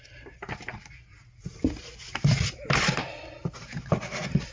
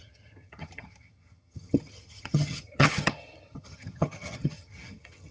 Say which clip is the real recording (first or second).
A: first